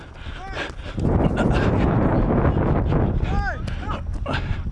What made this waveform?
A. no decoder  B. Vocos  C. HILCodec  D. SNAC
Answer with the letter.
A